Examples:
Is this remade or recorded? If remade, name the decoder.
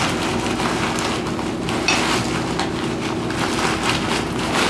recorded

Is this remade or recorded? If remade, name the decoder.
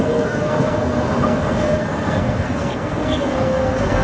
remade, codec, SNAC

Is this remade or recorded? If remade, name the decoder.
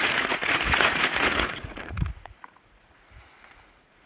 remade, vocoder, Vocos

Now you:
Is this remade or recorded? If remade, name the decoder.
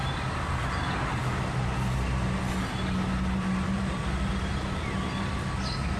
recorded